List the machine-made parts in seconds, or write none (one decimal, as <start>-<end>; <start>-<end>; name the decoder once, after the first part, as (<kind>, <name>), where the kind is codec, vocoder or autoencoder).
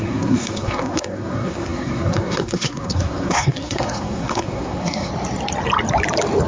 0.0-5.1 (codec, SNAC)